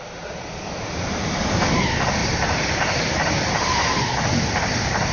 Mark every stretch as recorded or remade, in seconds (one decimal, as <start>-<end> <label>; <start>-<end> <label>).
0.0-2.2 recorded; 2.2-3.3 remade; 3.3-5.1 recorded